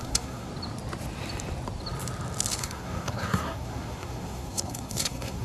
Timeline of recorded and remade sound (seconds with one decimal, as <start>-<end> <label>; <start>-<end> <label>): 0.0-0.5 remade; 0.5-2.6 recorded; 2.6-5.4 remade